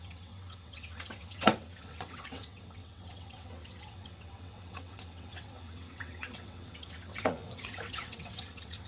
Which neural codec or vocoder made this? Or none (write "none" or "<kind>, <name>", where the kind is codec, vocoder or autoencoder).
vocoder, WaveNeXt